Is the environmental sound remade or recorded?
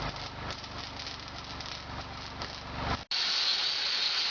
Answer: recorded